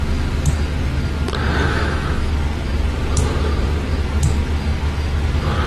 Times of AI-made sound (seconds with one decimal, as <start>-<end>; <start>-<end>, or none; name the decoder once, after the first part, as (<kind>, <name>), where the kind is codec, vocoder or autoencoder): 1.6-2.3 (autoencoder, DAC-VAE)